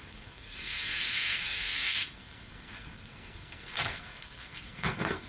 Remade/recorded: remade